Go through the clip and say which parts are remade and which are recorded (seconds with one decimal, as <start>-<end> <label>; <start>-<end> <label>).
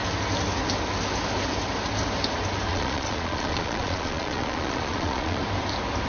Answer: 0.0-2.7 recorded; 2.7-5.4 remade; 5.4-6.1 recorded